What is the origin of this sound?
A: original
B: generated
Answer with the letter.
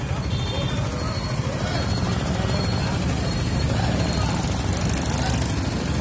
A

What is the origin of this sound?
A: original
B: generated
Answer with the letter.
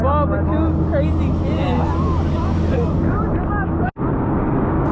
A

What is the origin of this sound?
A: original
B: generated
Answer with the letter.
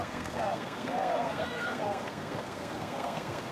B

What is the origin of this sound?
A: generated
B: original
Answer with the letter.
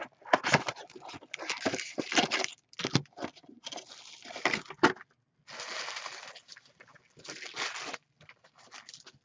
B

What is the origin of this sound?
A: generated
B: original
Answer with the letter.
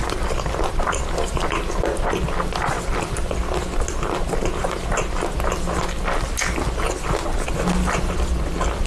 B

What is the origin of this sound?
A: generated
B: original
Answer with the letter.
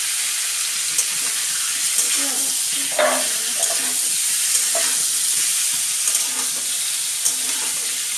B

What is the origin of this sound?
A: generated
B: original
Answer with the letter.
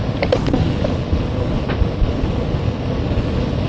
B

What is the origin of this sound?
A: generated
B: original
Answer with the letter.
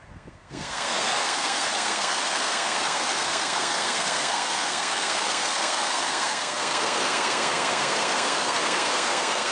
A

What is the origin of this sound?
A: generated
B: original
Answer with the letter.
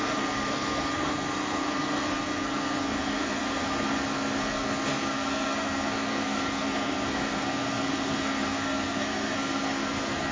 A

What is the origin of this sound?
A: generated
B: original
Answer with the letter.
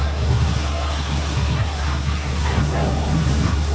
A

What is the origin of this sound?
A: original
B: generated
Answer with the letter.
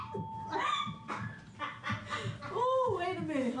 A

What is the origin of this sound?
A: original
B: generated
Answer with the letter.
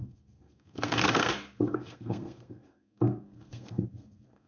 B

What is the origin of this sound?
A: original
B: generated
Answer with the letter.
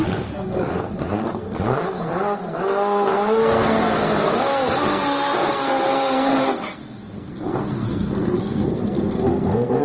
B